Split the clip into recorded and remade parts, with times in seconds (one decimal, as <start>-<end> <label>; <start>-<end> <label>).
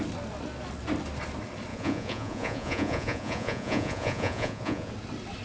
0.0-1.7 recorded; 1.7-4.9 remade; 4.9-5.4 recorded